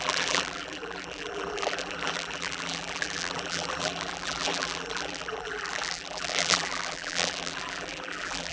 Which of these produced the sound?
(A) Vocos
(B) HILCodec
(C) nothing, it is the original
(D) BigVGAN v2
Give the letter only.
D